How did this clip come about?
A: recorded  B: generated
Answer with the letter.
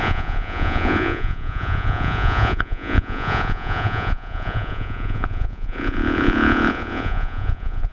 B